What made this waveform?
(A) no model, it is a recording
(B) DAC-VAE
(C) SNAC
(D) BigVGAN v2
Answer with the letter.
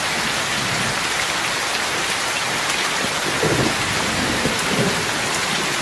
A